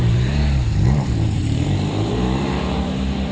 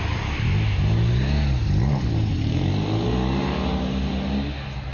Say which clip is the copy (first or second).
first